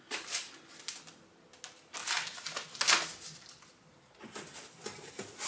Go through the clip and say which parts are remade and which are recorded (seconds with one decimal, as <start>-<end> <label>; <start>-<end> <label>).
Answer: 0.0-5.5 recorded